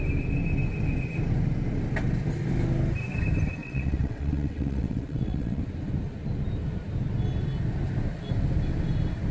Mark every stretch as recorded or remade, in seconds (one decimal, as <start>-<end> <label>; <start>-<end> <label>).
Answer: 0.0-3.6 recorded; 3.6-5.6 remade; 5.6-9.3 recorded